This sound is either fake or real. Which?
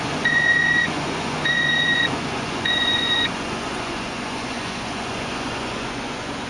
fake